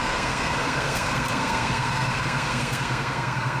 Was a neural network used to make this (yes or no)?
yes